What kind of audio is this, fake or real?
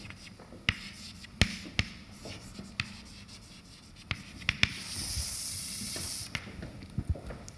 real